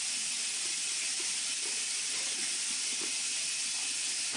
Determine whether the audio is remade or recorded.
recorded